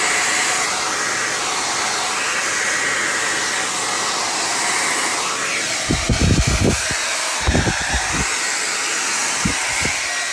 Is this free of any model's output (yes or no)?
yes